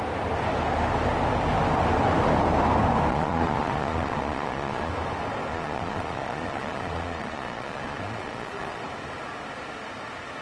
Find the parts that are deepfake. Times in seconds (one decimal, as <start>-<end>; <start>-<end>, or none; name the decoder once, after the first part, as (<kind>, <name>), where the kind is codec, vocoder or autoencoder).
3.1-4.9 (vocoder, Vocos); 5.5-8.8